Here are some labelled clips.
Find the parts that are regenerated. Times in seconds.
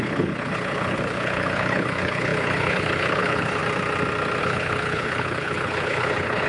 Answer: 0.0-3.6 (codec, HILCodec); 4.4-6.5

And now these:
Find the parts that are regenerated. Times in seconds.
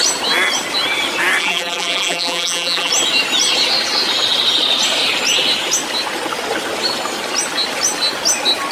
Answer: 1.4-2.9 (vocoder, BigVGAN v2)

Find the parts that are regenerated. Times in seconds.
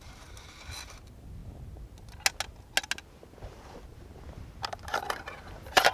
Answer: none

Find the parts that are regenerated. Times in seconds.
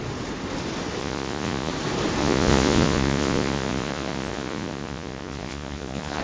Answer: 1.0-1.7 (vocoder, Vocos); 2.2-6.2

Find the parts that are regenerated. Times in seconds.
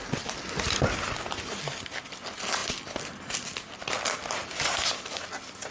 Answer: none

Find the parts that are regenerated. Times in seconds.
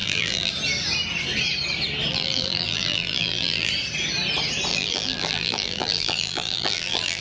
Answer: 0.0-0.5 (vocoder, BigVGAN v2); 2.1-3.7; 4.7-7.2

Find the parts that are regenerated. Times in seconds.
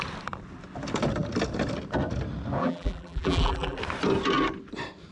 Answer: 2.6-3.8 (vocoder, BigVGAN v2)